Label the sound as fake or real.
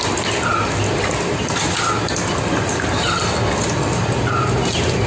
real